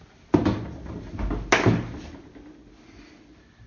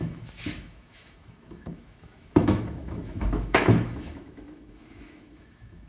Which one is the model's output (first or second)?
second